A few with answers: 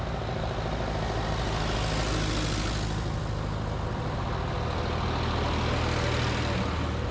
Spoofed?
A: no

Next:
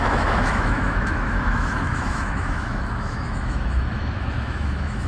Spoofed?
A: yes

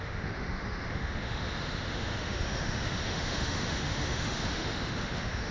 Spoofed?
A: yes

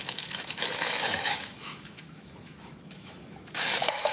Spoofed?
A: yes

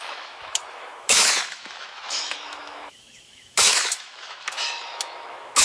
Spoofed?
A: yes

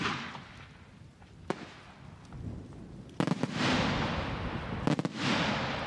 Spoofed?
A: no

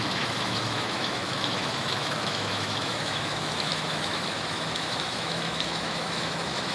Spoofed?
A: yes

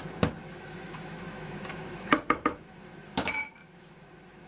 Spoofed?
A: yes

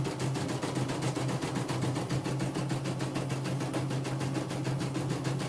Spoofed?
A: no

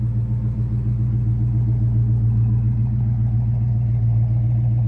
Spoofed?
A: no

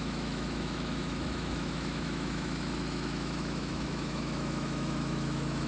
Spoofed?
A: yes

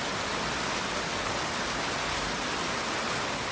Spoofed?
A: no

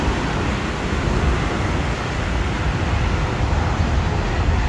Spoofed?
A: no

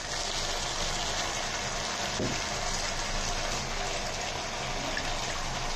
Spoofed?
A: no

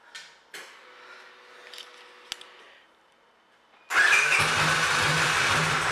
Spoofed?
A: no